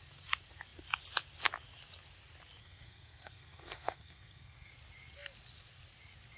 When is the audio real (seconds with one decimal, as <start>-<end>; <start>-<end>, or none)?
0.0-2.6; 4.7-6.4